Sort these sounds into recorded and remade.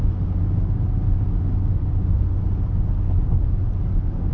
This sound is recorded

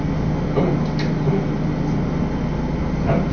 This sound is recorded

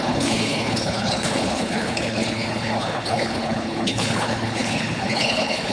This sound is remade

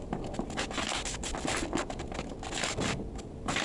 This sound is recorded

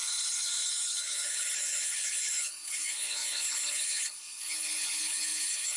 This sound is remade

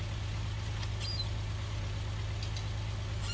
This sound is recorded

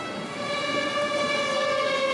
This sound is recorded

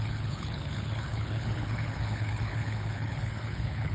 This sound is remade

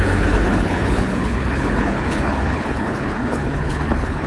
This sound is remade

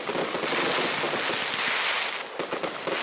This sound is recorded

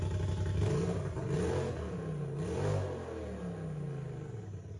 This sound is recorded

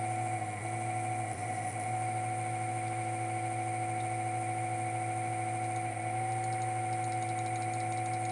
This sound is recorded